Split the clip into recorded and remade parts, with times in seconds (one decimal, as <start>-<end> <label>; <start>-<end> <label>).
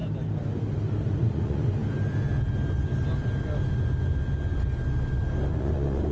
0.0-1.1 recorded; 1.1-1.8 remade; 1.8-5.5 recorded; 5.5-6.1 remade